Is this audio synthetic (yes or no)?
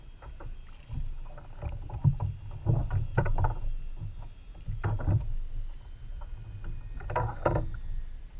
no